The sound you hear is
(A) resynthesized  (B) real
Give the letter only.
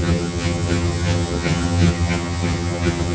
A